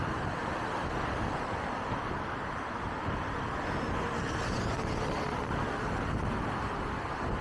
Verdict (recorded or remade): recorded